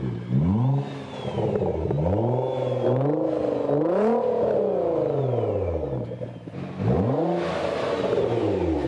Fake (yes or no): no